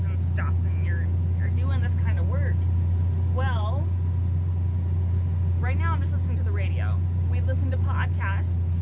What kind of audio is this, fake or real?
real